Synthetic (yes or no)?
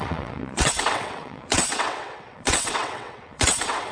yes